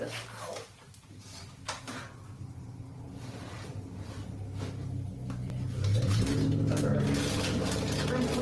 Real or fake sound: real